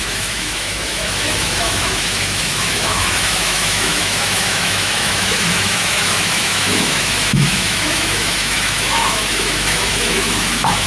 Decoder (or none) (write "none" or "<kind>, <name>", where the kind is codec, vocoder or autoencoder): autoencoder, DAC-VAE